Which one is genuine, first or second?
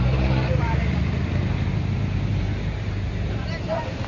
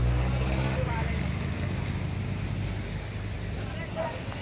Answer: second